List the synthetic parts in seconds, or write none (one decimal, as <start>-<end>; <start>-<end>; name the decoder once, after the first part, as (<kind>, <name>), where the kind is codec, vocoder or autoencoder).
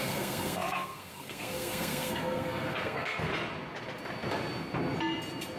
0.0-3.3 (codec, SNAC)